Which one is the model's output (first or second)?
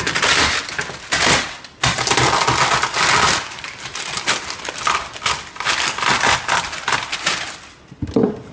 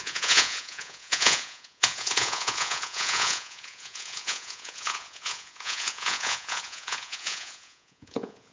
second